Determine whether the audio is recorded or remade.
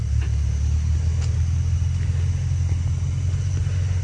recorded